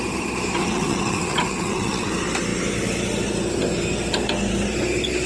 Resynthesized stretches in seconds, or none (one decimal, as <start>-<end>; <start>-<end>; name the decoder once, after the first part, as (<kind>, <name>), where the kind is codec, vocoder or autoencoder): 0.6-2.1 (vocoder, WaveNeXt)